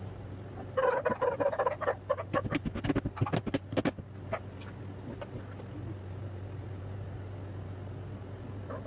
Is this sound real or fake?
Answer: real